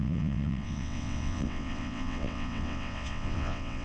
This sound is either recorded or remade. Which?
remade